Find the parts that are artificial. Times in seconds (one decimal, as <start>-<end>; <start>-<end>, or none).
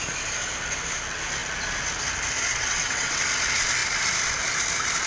2.5-3.2